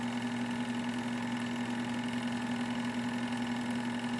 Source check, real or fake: real